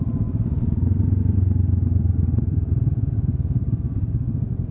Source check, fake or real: real